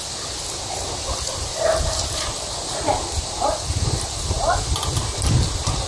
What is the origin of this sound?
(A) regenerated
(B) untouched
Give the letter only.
B